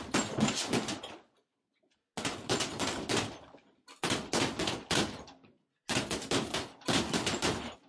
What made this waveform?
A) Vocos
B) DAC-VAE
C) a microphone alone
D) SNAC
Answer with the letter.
C